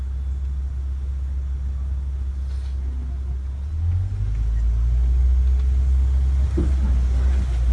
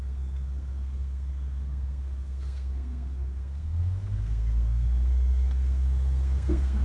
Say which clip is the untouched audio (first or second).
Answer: first